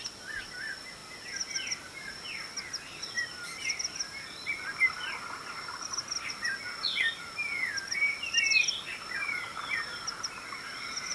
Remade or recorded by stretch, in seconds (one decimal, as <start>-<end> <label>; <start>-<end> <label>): 0.0-11.1 recorded